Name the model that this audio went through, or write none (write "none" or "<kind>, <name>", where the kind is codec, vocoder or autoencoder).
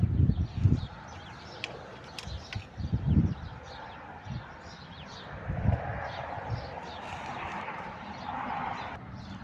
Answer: vocoder, BigVGAN v2